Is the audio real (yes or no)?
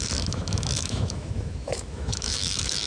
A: no